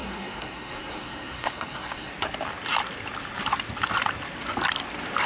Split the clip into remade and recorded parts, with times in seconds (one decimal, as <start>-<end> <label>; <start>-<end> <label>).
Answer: 0.0-2.1 remade; 2.1-5.3 recorded